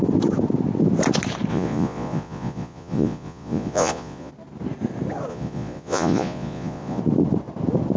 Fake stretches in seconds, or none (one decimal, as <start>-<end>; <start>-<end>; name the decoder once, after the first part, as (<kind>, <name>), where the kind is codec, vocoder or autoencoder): 1.5-4.3 (vocoder, Vocos); 5.3-7.0